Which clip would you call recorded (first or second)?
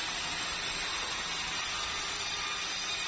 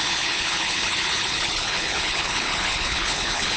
first